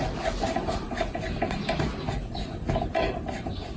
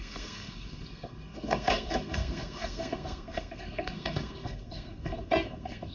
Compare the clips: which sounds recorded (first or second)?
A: first